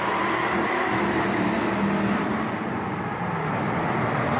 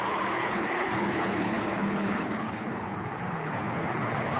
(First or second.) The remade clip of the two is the second